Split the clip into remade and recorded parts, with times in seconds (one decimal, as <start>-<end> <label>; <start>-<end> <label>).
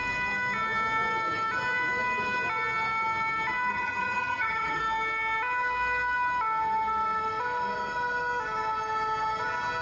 0.0-3.7 recorded; 3.7-4.8 remade; 4.8-9.8 recorded